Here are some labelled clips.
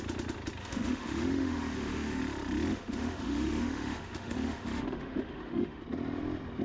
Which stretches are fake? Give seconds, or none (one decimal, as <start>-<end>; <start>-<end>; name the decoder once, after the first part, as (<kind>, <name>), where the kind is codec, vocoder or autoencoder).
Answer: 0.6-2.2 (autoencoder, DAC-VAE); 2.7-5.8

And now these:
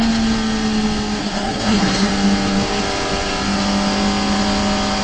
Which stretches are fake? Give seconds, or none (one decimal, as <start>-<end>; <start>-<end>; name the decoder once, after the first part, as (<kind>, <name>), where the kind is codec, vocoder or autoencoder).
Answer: 1.2-2.1 (codec, SNAC)

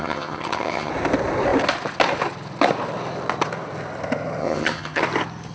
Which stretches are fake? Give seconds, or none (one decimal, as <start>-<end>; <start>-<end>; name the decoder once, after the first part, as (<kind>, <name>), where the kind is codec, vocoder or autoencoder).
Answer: 0.0-0.9 (vocoder, HiFi-GAN); 4.4-5.0

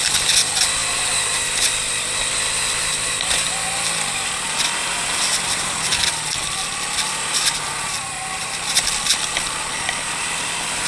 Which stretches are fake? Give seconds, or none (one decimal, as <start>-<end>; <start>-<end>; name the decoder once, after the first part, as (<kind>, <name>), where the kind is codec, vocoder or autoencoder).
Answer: none

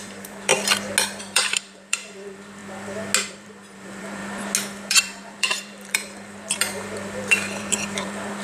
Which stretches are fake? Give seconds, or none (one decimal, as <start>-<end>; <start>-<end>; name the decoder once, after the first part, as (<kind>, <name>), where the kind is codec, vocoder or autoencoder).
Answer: 0.0-0.5 (vocoder, BigVGAN v2); 1.2-2.6; 3.3-4.2; 4.9-8.4

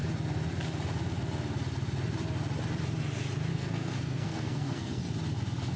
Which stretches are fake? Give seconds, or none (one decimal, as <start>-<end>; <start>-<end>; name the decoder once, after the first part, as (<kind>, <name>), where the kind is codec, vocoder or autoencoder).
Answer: 3.5-5.0 (codec, SNAC)